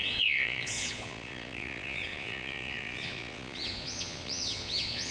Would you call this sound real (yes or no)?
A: no